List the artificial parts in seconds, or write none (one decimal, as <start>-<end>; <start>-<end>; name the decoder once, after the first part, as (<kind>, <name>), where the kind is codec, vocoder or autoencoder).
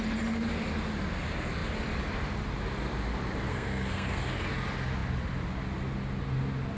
3.5-4.2 (codec, SNAC)